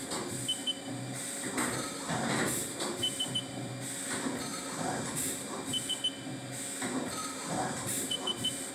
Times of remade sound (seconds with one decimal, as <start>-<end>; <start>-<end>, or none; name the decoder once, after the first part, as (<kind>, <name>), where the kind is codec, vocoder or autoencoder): 0.6-3.7 (vocoder, BigVGAN v2); 4.5-6.0; 7.2-8.7